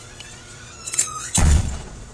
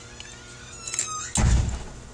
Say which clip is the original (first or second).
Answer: second